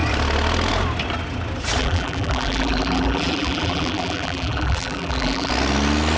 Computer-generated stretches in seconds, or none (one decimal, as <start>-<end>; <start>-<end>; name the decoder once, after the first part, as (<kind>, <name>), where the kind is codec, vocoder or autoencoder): 1.8-5.5 (vocoder, BigVGAN v2)